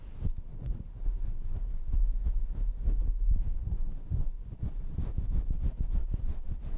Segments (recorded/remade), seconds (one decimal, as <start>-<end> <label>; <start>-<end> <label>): 0.0-0.5 recorded; 0.5-1.1 remade; 1.1-4.2 recorded; 4.2-5.0 remade; 5.0-6.0 recorded; 6.0-6.8 remade